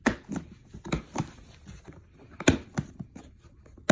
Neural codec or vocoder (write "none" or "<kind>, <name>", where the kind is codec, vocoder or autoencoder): none